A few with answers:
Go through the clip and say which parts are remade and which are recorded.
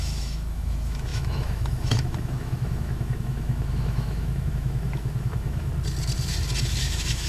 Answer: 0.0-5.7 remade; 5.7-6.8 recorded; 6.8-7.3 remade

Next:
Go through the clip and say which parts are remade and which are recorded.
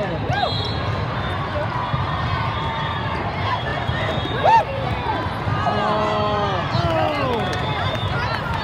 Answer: 0.0-8.6 recorded